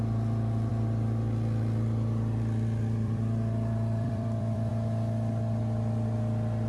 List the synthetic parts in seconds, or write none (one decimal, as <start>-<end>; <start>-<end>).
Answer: 0.7-4.7

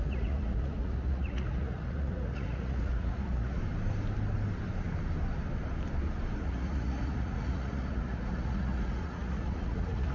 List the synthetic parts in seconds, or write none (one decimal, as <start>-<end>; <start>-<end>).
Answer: 0.0-3.6; 6.4-10.1

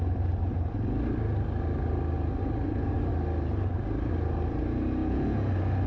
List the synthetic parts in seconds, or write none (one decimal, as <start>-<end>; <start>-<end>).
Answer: 5.0-5.5

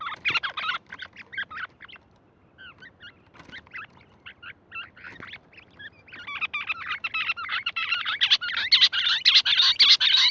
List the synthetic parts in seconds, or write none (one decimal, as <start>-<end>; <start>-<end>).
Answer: 7.5-8.1

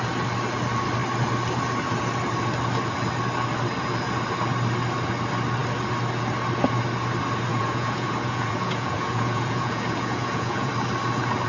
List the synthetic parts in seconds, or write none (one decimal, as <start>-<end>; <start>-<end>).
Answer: 7.5-10.7